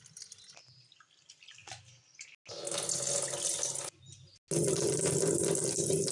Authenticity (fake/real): real